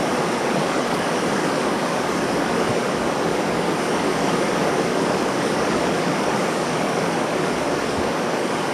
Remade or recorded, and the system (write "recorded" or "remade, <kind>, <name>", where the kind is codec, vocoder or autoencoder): remade, codec, DAC